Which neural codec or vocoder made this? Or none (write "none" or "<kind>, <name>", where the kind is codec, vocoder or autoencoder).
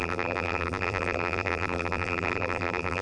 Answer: vocoder, BigVGAN v2